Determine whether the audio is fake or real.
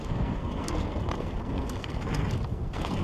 fake